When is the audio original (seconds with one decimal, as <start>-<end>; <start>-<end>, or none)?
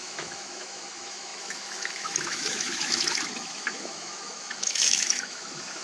none